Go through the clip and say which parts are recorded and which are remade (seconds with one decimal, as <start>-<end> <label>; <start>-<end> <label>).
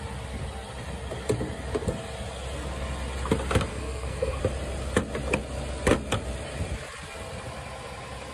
0.0-3.7 recorded; 3.7-4.4 remade; 4.4-8.3 recorded